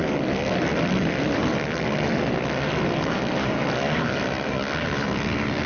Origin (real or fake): real